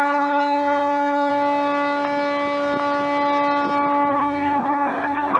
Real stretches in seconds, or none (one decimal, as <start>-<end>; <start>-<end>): 1.3-4.1